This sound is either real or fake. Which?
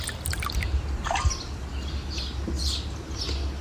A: real